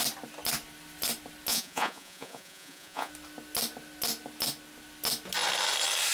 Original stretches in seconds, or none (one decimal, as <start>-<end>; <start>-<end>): 0.0-1.5; 3.1-6.1